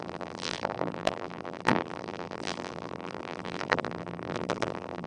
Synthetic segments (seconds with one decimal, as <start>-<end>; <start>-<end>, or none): 0.0-5.1